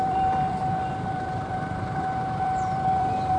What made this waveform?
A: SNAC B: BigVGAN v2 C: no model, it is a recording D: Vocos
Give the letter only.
B